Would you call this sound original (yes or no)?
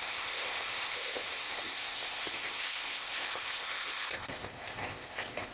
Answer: no